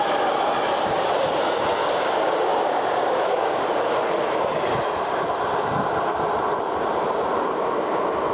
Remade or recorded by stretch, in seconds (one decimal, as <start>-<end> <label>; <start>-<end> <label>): 0.0-1.8 recorded; 1.8-3.8 remade; 3.8-8.3 recorded